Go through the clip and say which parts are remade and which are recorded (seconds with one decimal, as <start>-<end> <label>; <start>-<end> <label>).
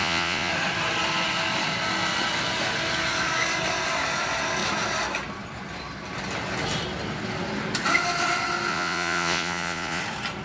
0.0-0.5 remade; 0.5-8.7 recorded; 8.7-10.0 remade; 10.0-10.4 recorded